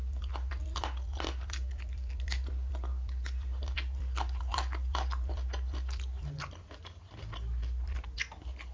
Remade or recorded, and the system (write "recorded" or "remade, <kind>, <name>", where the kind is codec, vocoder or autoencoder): recorded